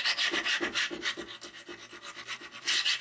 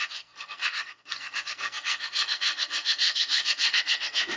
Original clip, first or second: first